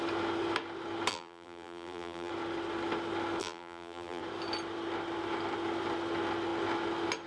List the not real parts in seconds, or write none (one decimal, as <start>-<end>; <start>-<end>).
1.1-2.3; 3.4-4.2